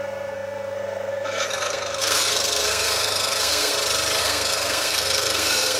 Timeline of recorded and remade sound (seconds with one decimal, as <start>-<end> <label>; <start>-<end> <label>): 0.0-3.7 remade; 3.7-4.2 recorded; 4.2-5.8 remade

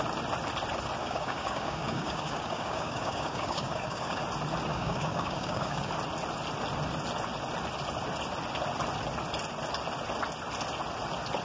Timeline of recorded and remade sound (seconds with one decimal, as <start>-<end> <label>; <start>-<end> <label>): 0.0-1.0 recorded; 1.0-4.2 remade; 4.2-4.7 recorded; 4.7-5.9 remade; 5.9-11.4 recorded

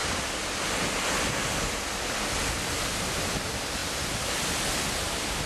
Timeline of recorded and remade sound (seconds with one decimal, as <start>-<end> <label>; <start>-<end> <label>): 0.0-3.8 recorded; 3.8-4.5 remade; 4.5-5.5 recorded

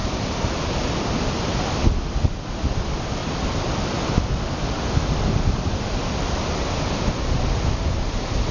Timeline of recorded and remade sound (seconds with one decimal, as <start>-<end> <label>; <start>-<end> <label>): 0.0-3.2 recorded; 3.2-6.8 remade; 6.8-8.5 recorded

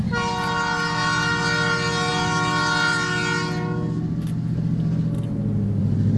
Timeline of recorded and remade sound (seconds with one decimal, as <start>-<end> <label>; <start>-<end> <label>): 0.0-6.2 recorded